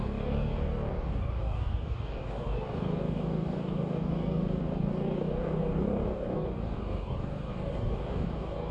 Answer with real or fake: fake